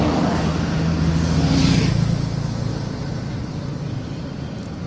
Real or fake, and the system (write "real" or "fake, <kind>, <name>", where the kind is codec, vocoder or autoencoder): real